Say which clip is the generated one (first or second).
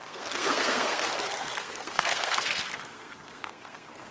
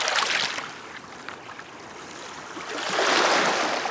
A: first